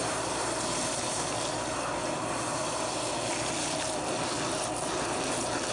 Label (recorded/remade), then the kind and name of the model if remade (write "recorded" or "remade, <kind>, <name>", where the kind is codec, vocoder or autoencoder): recorded